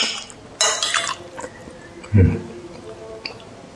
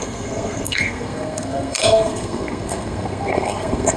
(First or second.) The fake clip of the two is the second